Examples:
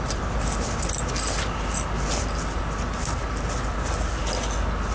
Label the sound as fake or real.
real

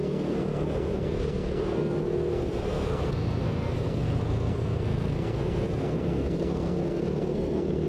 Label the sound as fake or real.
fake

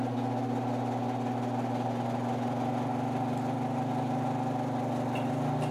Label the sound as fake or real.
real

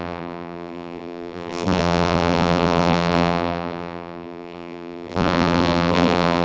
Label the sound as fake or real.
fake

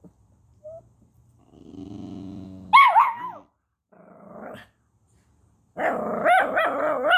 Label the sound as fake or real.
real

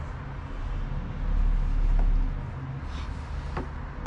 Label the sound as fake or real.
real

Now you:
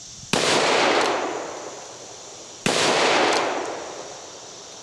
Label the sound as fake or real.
real